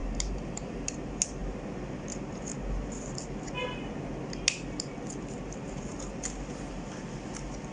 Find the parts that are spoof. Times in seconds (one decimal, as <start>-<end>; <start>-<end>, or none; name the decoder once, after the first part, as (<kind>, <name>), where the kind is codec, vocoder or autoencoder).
0.0-0.9 (vocoder, BigVGAN v2)